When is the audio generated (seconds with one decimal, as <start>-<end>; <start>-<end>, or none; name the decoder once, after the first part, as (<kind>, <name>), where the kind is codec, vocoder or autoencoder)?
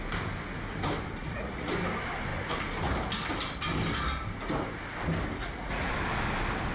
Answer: 1.2-1.7 (vocoder, Vocos); 5.4-5.9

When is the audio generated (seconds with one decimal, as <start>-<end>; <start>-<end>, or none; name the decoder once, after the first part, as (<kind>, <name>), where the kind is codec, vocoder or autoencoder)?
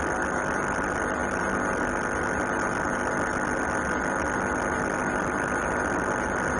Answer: none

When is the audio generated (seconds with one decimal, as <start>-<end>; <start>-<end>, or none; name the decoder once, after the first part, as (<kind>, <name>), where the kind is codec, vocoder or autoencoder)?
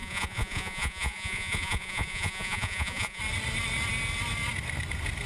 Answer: 0.0-3.2 (vocoder, Vocos)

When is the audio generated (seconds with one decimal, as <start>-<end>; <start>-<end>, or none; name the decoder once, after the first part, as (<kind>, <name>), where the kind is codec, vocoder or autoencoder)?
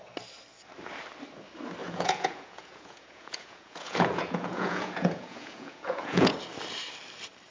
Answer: 1.8-6.3 (vocoder, Vocos)